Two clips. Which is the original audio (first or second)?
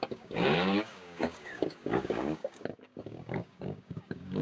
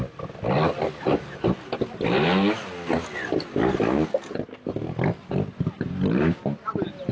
second